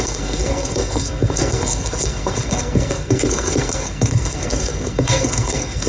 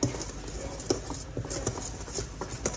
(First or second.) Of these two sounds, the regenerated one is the first